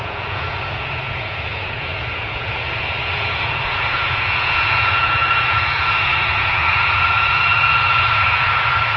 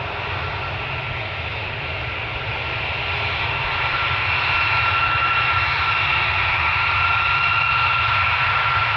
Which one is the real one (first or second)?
second